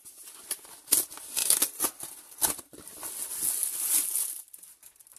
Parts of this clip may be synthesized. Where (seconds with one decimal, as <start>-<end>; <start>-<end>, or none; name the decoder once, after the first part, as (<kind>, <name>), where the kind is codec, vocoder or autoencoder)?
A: none